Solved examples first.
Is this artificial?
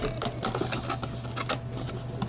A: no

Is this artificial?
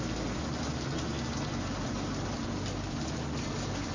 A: no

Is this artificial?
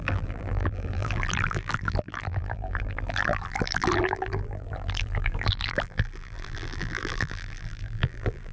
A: yes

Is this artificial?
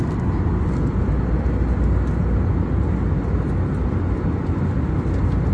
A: no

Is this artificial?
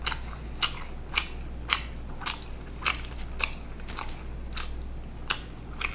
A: no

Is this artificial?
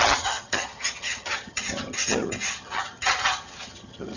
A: yes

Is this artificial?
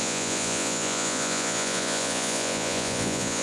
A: yes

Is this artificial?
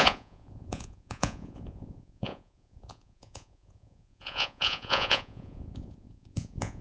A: yes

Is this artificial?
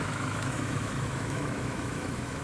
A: yes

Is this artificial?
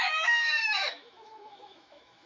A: yes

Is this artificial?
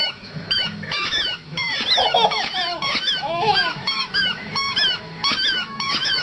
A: yes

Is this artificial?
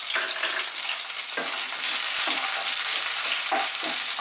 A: no